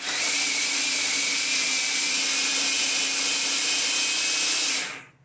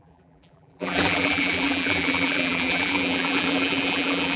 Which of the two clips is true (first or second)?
first